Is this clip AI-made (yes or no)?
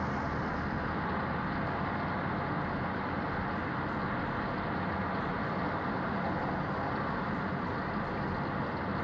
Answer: no